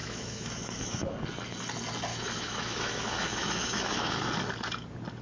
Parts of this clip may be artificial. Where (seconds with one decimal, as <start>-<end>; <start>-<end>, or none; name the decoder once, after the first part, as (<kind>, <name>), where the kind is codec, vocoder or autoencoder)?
0.0-1.1 (autoencoder, DAC-VAE); 2.1-4.3